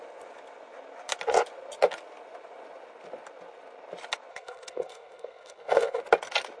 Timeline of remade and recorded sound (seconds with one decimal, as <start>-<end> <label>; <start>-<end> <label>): 0.0-4.3 recorded; 4.3-6.0 remade; 6.0-6.6 recorded